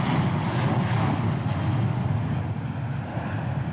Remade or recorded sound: recorded